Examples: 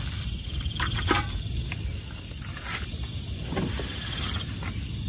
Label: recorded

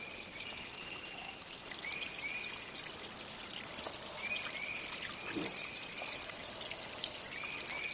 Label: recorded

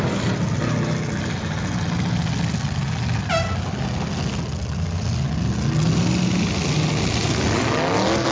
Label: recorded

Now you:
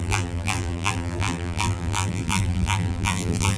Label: remade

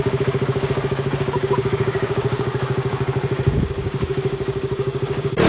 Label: remade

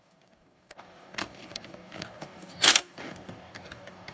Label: remade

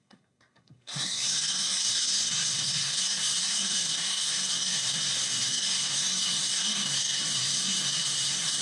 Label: remade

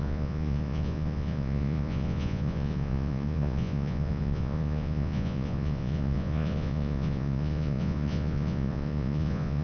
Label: remade